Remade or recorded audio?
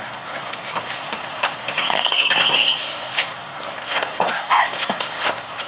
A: remade